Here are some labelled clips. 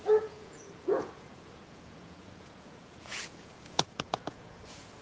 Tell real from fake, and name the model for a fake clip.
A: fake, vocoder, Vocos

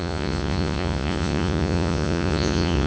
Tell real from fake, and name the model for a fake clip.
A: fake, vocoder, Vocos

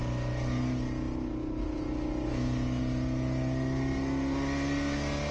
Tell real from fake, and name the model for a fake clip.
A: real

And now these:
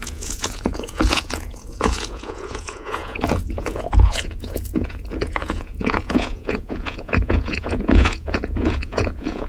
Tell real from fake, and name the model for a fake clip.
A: fake, vocoder, Vocos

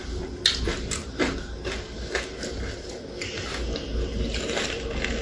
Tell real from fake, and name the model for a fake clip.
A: real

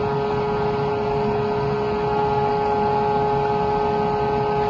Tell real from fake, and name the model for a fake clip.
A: real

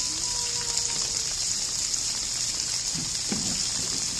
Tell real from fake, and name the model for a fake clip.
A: real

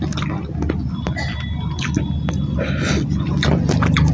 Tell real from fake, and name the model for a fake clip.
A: real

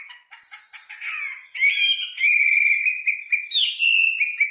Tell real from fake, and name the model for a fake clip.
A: real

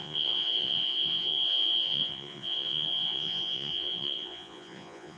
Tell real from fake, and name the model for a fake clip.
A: fake, vocoder, Vocos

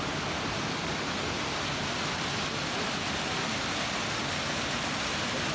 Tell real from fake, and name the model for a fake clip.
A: real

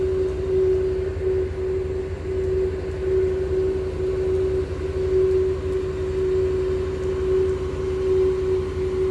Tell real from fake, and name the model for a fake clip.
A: real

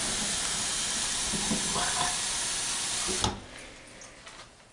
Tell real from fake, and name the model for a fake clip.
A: real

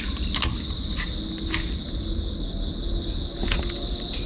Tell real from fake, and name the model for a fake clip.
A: real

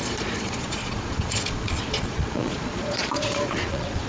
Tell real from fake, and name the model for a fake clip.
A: fake, vocoder, Vocos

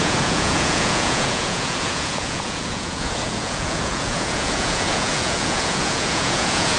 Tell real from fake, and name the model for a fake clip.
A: fake, vocoder, Vocos